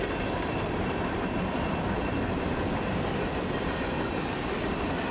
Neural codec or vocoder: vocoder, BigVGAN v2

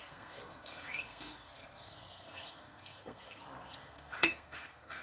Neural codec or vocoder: codec, SNAC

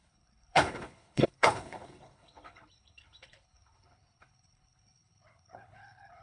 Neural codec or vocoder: codec, HILCodec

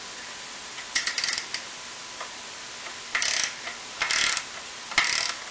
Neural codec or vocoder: none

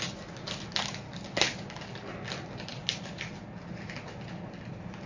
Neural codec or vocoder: none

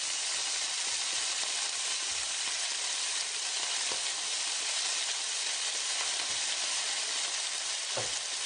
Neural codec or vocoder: none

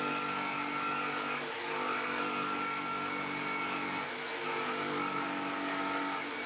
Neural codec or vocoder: codec, DAC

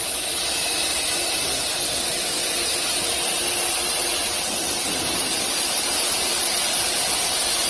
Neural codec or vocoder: none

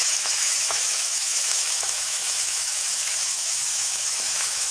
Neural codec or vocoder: autoencoder, DAC-VAE